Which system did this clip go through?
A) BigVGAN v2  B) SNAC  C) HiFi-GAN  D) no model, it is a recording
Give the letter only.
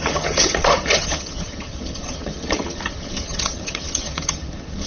C